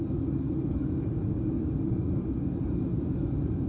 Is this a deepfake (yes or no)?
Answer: yes